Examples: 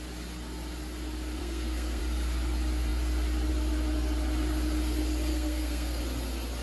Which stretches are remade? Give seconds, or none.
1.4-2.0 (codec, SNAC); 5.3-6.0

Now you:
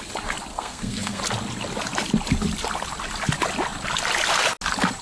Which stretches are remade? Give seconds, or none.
0.5-1.2 (codec, SNAC)

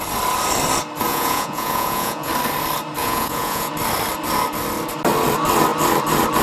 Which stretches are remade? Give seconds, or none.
1.1-2.3 (vocoder, Vocos); 3.0-3.7

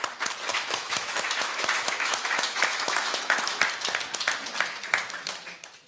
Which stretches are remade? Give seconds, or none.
0.5-3.6 (autoencoder, DAC-VAE)

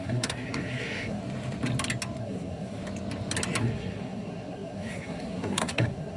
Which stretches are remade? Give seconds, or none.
0.0-1.2 (codec, SNAC); 2.2-2.8; 3.6-6.2

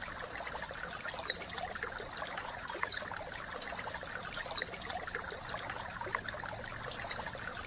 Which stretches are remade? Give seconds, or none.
2.4-3.0 (vocoder, Vocos)

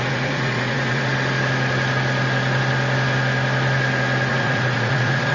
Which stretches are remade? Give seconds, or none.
0.0-1.1 (vocoder, Vocos); 4.3-5.3

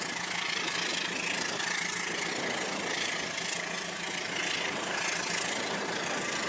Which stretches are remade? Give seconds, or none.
none